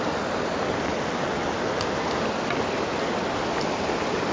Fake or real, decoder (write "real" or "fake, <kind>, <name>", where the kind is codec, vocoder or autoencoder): real